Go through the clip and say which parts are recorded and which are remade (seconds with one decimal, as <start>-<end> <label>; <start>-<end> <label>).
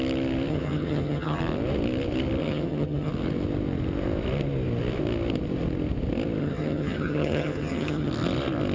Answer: 0.0-0.5 recorded; 0.5-1.4 remade; 1.4-2.4 recorded; 2.4-3.1 remade; 3.1-6.4 recorded; 6.4-8.1 remade; 8.1-8.7 recorded